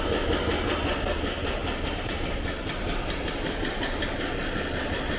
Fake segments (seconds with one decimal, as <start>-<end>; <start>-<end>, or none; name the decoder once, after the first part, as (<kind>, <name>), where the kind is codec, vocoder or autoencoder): 1.6-3.2 (vocoder, BigVGAN v2)

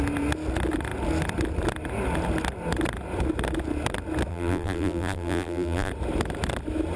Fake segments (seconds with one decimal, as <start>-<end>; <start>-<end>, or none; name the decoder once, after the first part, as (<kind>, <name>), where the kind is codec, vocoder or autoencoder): 4.3-5.9 (vocoder, BigVGAN v2)